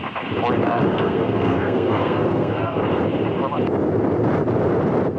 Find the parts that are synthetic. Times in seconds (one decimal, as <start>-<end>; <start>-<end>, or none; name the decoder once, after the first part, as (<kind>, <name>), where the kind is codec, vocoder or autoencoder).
0.6-2.8 (codec, SNAC)